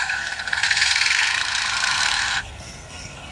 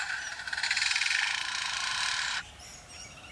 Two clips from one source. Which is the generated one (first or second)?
first